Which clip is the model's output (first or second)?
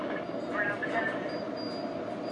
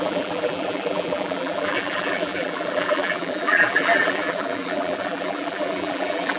second